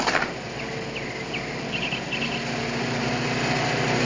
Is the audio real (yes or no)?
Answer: yes